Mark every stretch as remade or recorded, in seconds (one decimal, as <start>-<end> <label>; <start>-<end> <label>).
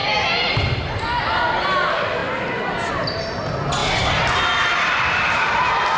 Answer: 0.0-6.0 recorded